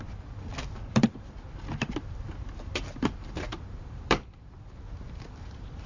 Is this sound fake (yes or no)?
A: yes